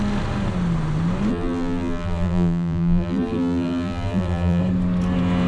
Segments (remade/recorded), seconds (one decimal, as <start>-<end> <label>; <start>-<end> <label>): 0.0-1.3 recorded; 1.3-4.6 remade; 4.6-5.5 recorded